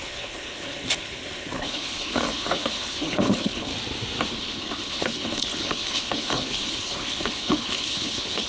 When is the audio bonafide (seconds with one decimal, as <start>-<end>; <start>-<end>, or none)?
3.7-4.3